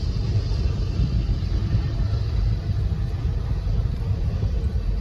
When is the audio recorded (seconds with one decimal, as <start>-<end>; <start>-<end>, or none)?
0.0-5.0